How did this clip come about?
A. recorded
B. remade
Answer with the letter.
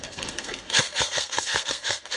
B